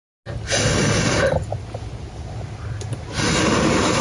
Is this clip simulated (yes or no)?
no